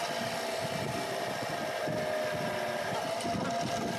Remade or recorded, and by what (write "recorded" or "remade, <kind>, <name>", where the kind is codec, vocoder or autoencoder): recorded